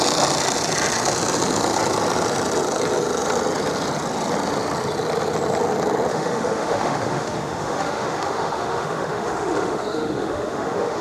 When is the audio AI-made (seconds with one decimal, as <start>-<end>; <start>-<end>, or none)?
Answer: 6.1-11.0